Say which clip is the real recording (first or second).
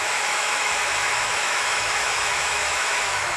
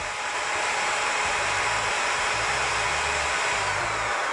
second